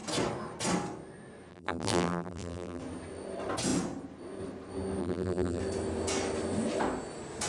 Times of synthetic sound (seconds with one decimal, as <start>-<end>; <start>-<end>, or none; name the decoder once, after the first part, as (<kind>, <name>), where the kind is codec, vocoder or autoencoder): 1.5-2.8 (vocoder, BigVGAN v2); 5.0-5.6